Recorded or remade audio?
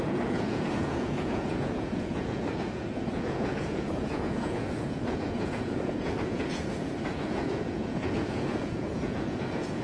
remade